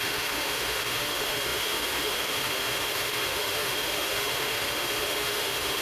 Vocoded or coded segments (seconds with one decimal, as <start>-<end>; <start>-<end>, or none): 0.0-5.8

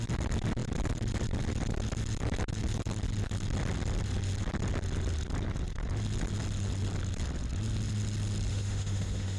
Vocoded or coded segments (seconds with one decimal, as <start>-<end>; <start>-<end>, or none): 8.5-9.4

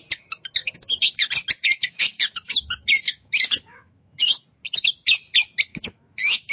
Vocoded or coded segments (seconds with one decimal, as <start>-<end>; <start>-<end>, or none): 0.6-1.3; 1.8-4.4; 5.7-6.5

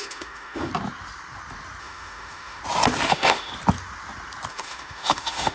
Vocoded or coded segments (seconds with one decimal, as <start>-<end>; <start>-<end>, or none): 0.0-0.7; 1.8-2.6; 3.1-3.5; 4.5-5.5

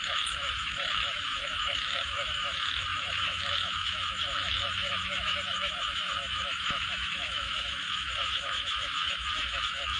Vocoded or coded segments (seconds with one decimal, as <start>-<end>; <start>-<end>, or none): 0.0-10.0